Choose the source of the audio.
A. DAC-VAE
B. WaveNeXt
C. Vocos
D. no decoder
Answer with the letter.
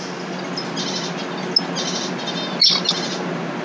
D